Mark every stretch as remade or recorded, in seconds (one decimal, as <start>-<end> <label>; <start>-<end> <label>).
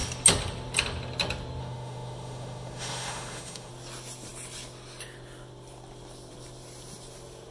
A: 0.0-1.6 recorded; 1.6-3.7 remade; 3.7-7.5 recorded